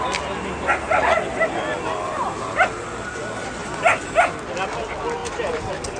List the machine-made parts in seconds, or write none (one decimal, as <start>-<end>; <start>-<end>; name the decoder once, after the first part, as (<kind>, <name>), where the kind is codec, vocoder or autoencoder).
none